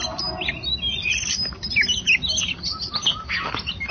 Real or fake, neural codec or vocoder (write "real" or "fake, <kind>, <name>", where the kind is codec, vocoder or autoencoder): real